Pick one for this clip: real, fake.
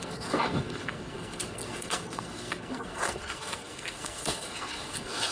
fake